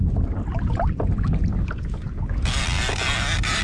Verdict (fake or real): real